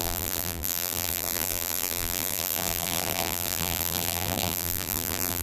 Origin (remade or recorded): remade